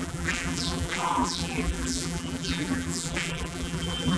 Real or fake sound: fake